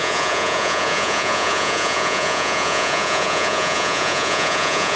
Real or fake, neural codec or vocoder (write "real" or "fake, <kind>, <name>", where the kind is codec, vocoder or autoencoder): fake, vocoder, Vocos